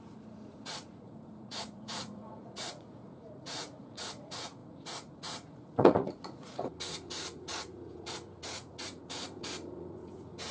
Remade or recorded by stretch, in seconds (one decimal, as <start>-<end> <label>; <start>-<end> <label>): 0.0-10.5 remade